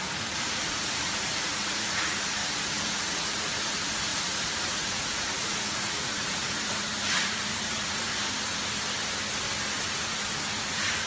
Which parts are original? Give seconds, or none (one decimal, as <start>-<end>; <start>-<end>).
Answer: 2.4-3.0; 8.1-10.0